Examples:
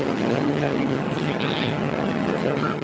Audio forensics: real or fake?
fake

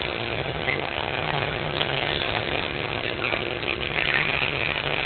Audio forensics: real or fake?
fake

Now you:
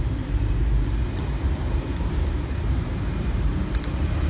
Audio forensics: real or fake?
fake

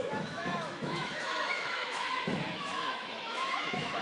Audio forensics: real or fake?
fake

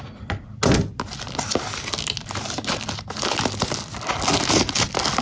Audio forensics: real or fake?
real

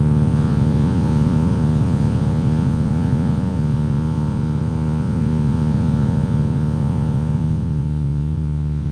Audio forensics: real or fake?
fake